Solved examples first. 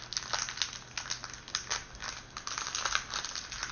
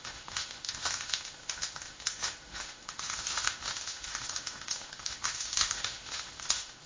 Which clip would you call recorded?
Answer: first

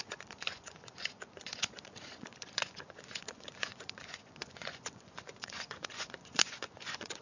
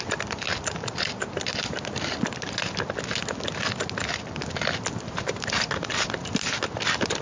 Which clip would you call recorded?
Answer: second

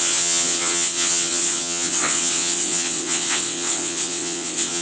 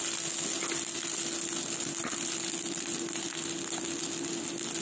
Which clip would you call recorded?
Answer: second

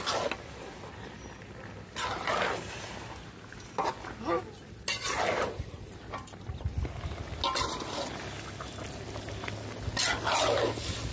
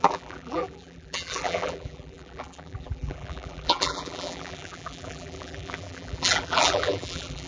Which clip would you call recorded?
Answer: first